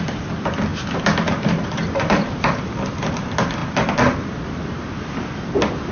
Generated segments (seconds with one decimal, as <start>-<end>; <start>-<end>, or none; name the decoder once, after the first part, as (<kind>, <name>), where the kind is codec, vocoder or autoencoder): 0.7-3.1 (vocoder, BigVGAN v2)